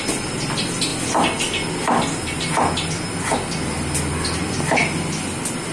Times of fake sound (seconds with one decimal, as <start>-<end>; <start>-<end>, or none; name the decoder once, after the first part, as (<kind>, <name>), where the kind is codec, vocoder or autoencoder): none